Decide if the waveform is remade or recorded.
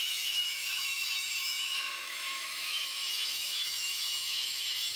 remade